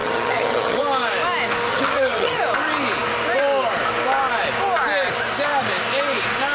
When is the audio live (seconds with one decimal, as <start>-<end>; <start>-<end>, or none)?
0.8-1.7; 2.4-6.5